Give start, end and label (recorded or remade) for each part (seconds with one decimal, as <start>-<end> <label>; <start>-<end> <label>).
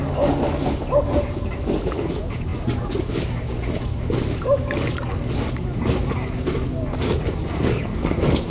0.0-8.5 remade